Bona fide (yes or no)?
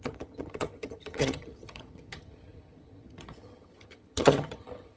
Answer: no